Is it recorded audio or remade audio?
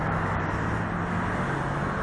recorded